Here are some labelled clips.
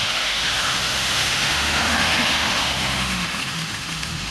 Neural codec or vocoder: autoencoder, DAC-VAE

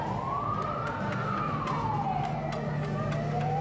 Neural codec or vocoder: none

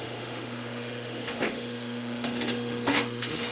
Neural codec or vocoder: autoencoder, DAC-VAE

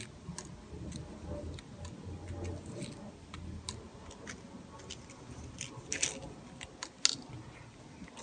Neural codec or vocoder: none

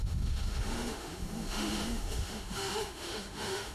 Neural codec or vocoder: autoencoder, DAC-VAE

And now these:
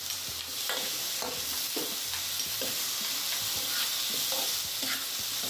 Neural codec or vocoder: none